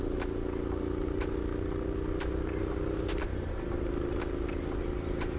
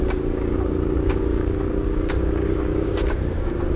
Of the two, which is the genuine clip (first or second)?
first